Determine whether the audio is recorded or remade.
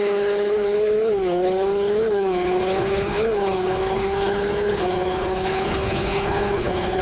remade